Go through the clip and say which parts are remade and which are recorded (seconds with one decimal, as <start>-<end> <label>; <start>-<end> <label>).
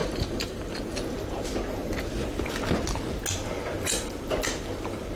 0.0-0.8 remade; 0.8-5.2 recorded